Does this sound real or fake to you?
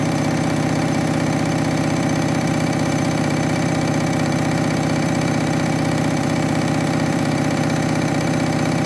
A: fake